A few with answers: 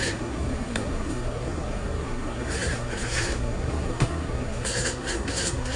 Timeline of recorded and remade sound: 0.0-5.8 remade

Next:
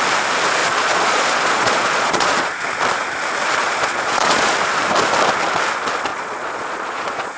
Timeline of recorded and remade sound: 0.0-0.6 recorded; 0.6-2.6 remade; 2.6-3.6 recorded; 3.6-4.5 remade; 4.5-6.1 recorded; 6.1-7.4 remade